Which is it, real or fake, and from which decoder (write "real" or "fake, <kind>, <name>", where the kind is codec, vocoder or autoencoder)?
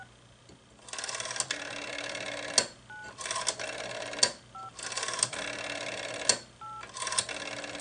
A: real